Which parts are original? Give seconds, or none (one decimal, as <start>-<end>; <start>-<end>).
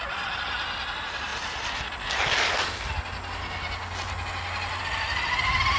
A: 0.0-5.8